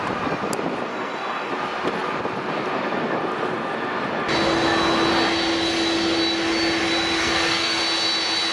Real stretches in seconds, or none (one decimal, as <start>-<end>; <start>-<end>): 0.0-0.9; 1.5-7.2; 7.8-8.5